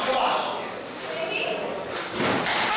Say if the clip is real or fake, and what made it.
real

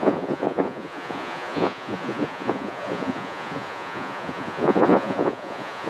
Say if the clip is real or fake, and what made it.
fake, vocoder, Vocos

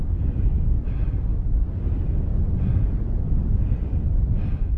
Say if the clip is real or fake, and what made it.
real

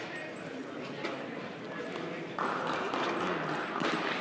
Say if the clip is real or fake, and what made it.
real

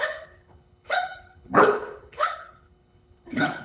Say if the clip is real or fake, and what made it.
fake, codec, HILCodec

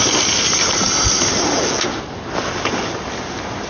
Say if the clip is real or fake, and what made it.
real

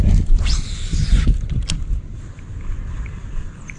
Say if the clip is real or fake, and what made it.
real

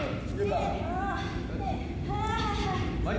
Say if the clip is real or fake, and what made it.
real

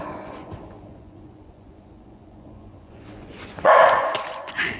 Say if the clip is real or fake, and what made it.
fake, vocoder, Vocos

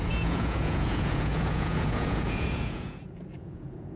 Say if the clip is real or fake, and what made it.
fake, vocoder, Vocos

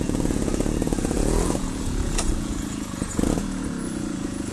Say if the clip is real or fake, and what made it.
fake, vocoder, Vocos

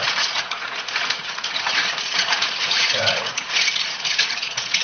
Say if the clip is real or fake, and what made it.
fake, vocoder, Vocos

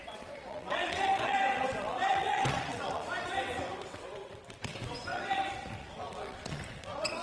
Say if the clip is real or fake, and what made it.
fake, vocoder, WaveNeXt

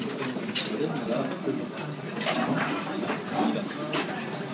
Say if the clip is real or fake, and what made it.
real